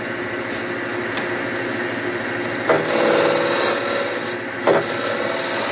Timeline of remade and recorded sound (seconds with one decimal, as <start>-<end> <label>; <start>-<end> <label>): 0.0-5.7 recorded